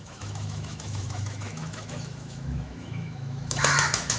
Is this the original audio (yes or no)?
no